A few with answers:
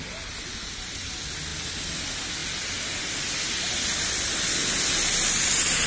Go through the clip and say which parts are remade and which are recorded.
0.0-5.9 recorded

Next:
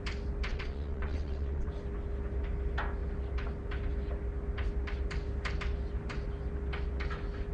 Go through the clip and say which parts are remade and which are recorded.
0.0-0.5 recorded; 0.5-1.7 remade; 1.7-7.5 recorded

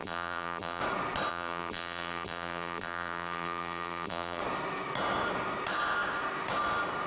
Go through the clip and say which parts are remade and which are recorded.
0.0-0.8 remade; 0.8-1.3 recorded; 1.3-4.4 remade; 4.4-7.1 recorded

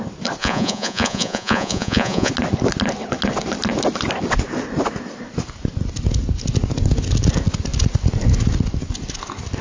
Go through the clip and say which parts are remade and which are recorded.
0.0-0.4 recorded; 0.4-2.3 remade; 2.3-9.6 recorded

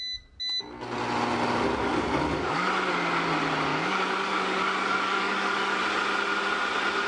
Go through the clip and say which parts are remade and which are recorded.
0.0-1.8 recorded; 1.8-2.7 remade; 2.7-3.7 recorded; 3.7-5.8 remade; 5.8-7.1 recorded